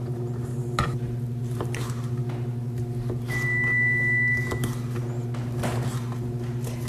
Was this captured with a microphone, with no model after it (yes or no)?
yes